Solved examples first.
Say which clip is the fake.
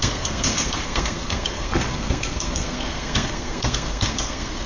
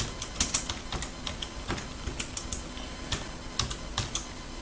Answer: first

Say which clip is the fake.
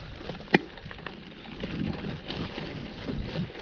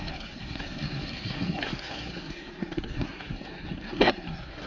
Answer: second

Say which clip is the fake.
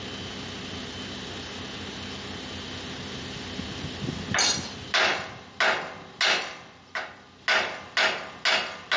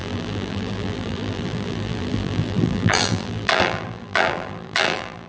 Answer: second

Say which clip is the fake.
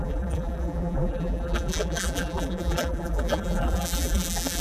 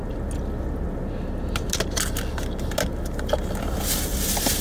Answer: first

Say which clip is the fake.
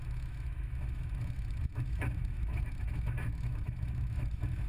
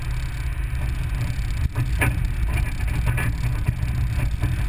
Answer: first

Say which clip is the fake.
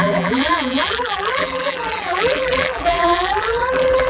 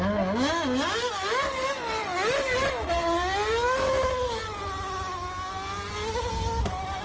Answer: first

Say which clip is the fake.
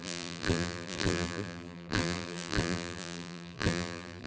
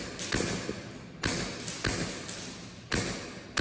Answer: first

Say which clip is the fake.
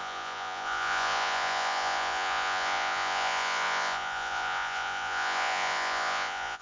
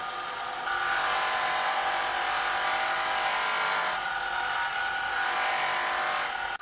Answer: first